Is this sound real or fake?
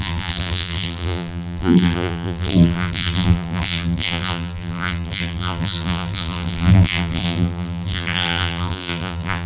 fake